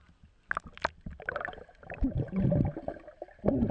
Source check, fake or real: real